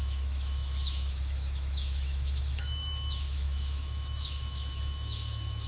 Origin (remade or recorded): remade